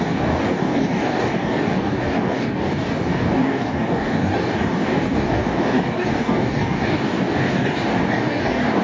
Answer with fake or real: fake